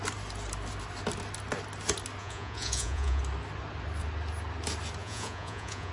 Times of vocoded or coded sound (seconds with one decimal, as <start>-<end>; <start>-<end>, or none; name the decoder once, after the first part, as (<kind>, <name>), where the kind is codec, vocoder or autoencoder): 2.2-3.2 (vocoder, Vocos); 5.0-5.9